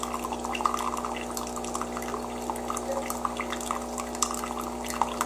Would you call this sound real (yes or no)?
yes